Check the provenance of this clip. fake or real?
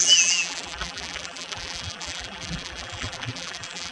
fake